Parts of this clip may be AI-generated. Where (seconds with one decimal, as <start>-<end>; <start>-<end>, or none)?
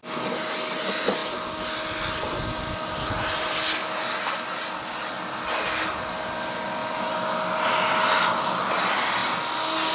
none